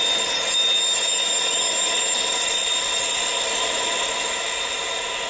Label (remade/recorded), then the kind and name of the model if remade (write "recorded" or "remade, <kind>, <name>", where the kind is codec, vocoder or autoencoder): recorded